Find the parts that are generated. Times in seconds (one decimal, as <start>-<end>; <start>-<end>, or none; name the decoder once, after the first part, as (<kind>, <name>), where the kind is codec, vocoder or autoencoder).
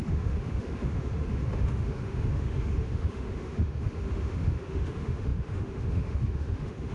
0.0-6.9 (autoencoder, DAC-VAE)